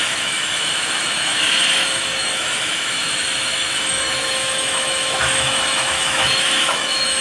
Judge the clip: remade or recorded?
remade